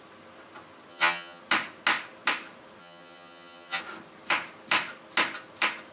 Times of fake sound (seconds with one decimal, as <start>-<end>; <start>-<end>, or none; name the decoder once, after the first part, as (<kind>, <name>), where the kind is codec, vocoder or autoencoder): 0.9-1.4 (vocoder, HiFi-GAN); 2.8-3.8